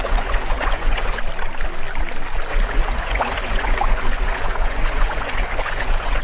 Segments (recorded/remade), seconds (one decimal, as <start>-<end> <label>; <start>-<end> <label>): 0.0-1.2 remade; 1.2-2.5 recorded; 2.5-6.2 remade